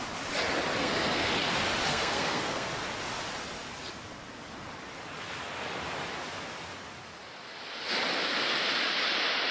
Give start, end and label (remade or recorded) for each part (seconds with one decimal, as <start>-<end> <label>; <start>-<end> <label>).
0.0-0.8 recorded; 0.8-1.3 remade; 1.3-1.9 recorded; 1.9-2.7 remade; 2.7-9.5 recorded